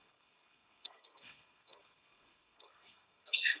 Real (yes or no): no